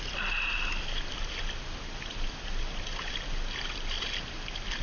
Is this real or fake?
real